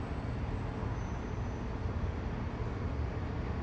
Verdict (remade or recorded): recorded